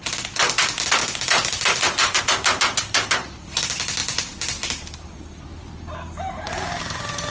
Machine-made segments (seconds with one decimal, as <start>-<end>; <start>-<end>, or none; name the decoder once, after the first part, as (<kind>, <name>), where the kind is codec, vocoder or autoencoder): 1.0-2.2 (vocoder, BigVGAN v2); 4.0-5.5